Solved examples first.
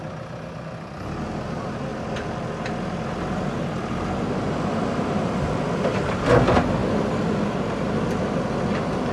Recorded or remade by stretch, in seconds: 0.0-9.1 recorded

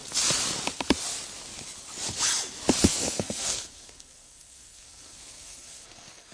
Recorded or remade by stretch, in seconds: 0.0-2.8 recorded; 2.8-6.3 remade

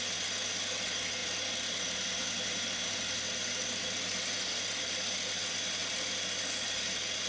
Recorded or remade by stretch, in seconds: 0.0-7.3 recorded